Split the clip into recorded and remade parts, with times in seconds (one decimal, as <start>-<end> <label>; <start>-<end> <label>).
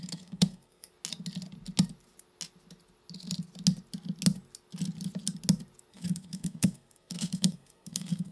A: 0.0-0.9 remade; 0.9-5.9 recorded; 5.9-8.3 remade